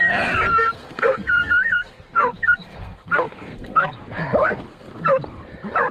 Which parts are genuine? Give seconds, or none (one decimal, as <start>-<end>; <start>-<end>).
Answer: 0.0-0.5; 4.0-4.4; 4.9-5.9